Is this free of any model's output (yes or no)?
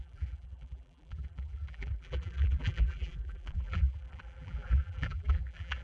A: no